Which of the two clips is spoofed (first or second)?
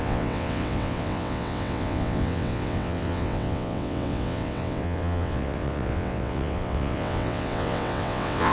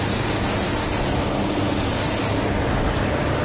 first